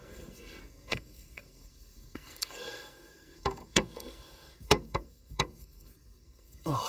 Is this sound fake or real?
fake